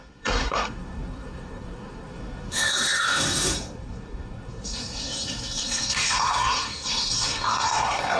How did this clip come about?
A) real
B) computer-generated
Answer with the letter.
B